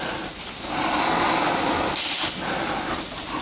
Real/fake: real